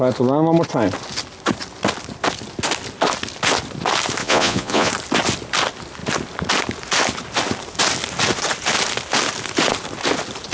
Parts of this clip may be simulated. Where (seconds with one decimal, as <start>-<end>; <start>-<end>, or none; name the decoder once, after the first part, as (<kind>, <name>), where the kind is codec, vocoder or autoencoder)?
4.2-4.9 (vocoder, Vocos)